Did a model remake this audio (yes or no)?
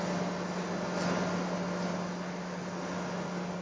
no